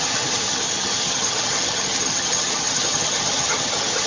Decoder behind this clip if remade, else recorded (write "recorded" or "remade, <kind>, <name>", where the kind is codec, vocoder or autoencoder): remade, vocoder, HiFi-GAN